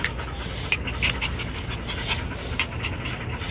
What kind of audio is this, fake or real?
real